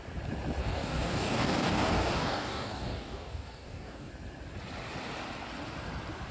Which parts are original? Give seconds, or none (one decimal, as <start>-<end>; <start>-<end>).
0.0-0.6; 4.1-6.3